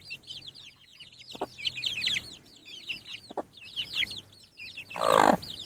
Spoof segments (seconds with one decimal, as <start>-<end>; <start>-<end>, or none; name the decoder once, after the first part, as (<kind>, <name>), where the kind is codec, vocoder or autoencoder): none